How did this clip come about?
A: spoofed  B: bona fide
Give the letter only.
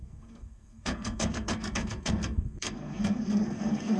A